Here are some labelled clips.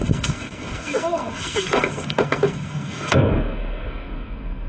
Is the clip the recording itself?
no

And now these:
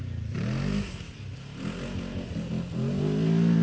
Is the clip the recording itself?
yes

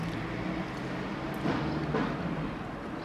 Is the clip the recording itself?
yes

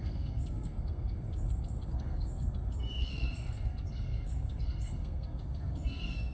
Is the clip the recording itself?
no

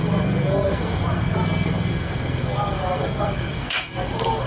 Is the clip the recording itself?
no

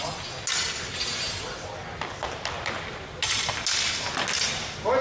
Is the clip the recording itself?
yes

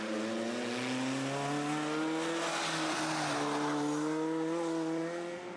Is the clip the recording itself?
yes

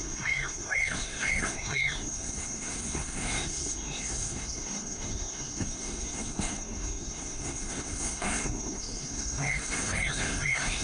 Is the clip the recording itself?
no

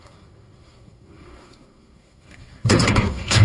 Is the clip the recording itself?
no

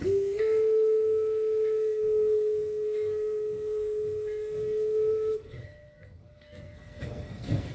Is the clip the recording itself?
no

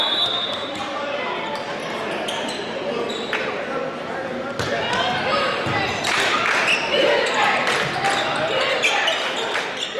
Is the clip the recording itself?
yes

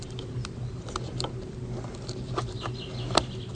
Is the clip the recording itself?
yes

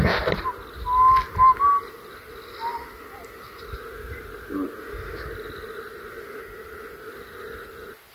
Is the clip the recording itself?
yes